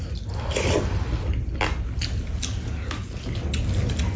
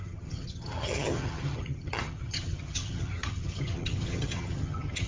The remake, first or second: second